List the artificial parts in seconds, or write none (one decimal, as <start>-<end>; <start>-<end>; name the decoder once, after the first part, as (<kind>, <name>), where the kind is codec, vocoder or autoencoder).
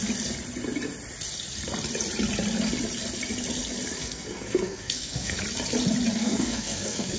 4.0-5.4 (codec, SNAC); 6.2-7.2